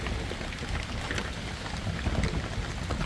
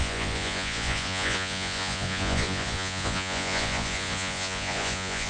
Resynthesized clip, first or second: second